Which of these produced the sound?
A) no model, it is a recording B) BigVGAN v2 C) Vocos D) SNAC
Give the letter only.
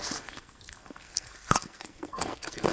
D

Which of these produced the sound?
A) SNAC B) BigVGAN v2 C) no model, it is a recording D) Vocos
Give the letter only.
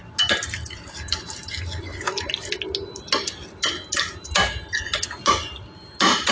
C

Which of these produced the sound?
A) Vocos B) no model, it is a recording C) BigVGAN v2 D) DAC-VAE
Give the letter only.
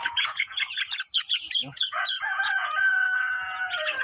A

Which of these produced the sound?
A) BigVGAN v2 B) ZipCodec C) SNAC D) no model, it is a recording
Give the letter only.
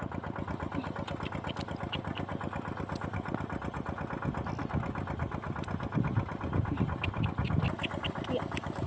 D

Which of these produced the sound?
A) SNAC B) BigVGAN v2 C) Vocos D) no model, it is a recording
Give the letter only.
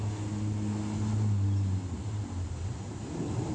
D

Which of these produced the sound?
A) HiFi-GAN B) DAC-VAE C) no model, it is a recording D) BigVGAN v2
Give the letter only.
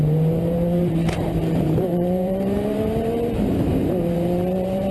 D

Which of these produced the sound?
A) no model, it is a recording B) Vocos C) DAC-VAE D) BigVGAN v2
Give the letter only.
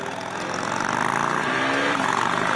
A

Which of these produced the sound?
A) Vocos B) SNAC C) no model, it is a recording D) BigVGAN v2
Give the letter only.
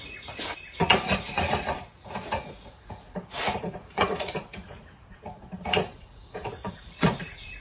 A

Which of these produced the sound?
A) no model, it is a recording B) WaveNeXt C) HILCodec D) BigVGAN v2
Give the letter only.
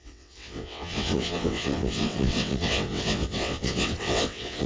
B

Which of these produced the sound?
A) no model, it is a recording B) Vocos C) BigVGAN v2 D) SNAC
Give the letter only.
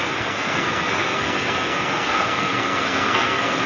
D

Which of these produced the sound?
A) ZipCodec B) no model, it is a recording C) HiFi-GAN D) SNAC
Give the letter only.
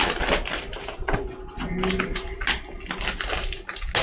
B